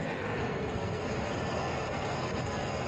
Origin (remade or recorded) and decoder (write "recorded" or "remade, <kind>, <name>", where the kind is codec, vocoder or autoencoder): remade, codec, SNAC